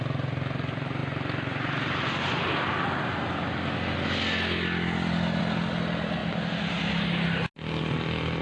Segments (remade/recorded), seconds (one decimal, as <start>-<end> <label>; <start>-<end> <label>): 0.0-8.4 recorded